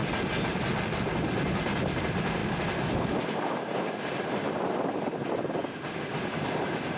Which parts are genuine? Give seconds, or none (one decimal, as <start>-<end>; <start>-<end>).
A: 0.0-7.0